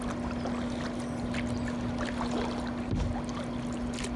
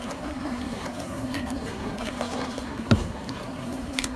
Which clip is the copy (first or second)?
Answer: second